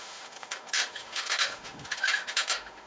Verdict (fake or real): fake